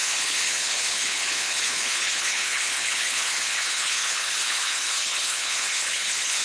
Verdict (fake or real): fake